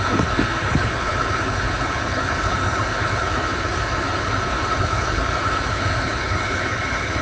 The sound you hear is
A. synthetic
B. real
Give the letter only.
A